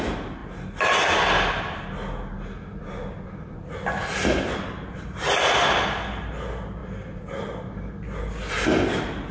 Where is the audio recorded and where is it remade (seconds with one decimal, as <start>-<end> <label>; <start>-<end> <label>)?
0.0-9.3 recorded